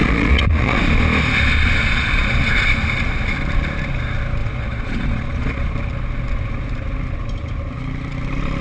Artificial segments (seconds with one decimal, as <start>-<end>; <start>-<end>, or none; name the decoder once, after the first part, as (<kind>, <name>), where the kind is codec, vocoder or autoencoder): 0.0-0.8 (vocoder, Vocos); 1.8-2.4; 4.4-5.7